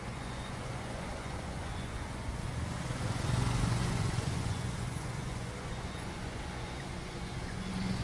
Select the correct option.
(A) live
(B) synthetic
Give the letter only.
B